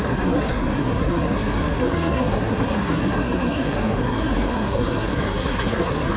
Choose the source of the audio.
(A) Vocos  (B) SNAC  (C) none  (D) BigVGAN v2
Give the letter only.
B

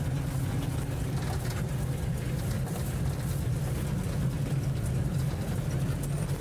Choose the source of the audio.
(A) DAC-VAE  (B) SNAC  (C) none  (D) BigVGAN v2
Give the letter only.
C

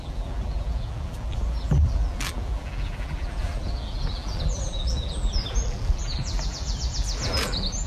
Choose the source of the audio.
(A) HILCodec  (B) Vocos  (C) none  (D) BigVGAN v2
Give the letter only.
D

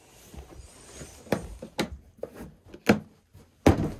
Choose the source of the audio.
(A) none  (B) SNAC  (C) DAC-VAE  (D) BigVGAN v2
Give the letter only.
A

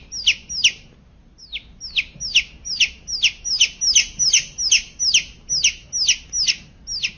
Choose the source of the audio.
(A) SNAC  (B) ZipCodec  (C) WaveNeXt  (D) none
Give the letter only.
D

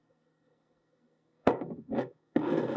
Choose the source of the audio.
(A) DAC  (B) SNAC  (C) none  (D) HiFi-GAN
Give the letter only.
B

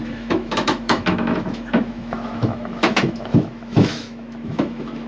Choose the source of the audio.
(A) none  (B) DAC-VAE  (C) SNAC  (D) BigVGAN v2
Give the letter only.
B